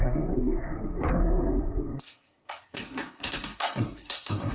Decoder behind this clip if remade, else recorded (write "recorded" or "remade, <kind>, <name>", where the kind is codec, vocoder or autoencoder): remade, codec, SNAC